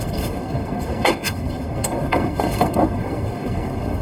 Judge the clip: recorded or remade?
remade